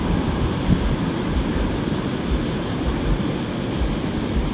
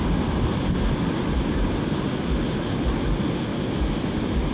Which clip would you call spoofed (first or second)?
first